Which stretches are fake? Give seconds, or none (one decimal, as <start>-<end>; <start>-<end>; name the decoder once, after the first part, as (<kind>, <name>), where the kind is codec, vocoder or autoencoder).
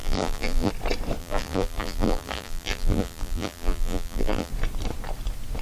0.0-0.7 (vocoder, BigVGAN v2); 1.2-4.5